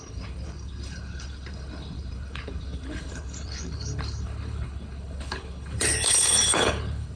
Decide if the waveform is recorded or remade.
remade